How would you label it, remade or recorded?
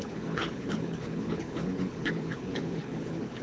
remade